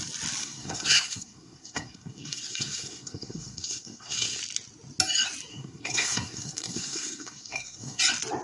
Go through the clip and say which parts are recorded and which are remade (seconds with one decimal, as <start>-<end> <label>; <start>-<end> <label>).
0.0-0.4 recorded; 0.4-4.4 remade; 4.4-5.5 recorded; 5.5-8.0 remade; 8.0-8.4 recorded